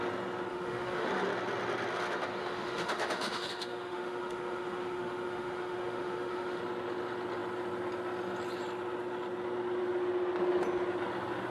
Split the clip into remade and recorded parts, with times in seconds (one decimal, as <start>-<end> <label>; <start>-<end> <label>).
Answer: 0.0-0.5 recorded; 0.5-1.1 remade; 1.1-2.4 recorded; 2.4-6.6 remade; 6.6-11.5 recorded